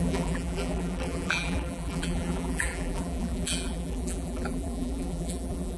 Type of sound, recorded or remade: remade